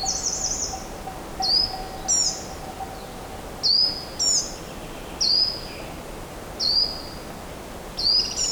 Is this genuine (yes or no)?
yes